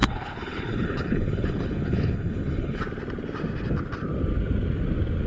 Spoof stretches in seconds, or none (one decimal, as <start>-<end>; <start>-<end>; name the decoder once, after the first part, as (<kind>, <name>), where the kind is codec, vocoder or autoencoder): 0.0-2.8 (codec, HILCodec)